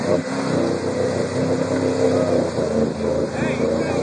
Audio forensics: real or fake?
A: real